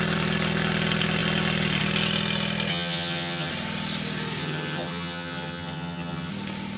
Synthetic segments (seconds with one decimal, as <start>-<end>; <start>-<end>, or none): 2.7-3.5; 4.4-6.3